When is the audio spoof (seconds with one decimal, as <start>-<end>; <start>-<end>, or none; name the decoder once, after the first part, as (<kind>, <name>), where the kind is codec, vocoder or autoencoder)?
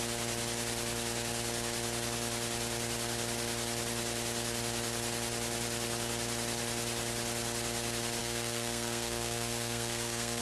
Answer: 8.2-10.4 (codec, SNAC)